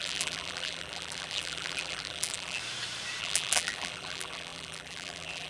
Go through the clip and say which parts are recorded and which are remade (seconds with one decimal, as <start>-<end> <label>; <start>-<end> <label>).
0.0-2.6 remade; 2.6-3.2 recorded; 3.2-5.5 remade